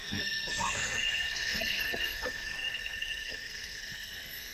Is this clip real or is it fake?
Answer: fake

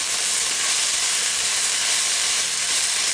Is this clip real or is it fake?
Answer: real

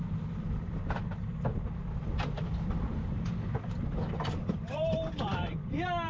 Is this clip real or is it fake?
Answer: real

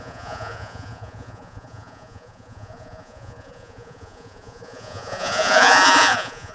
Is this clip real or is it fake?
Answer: fake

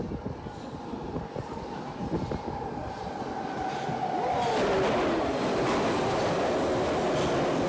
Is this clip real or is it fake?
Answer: real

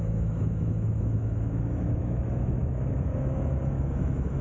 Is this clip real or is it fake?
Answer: fake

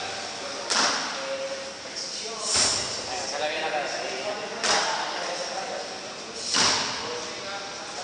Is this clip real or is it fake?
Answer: real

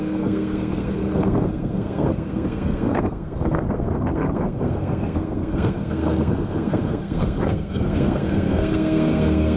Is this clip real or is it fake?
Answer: fake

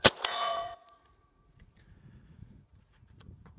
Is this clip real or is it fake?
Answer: fake